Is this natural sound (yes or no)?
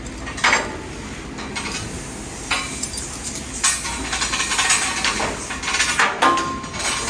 yes